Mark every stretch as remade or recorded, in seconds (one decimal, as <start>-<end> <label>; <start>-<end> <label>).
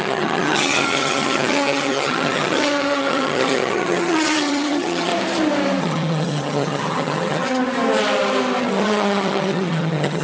0.0-5.1 remade; 5.1-5.8 recorded; 5.8-7.6 remade; 7.6-8.6 recorded; 8.6-10.2 remade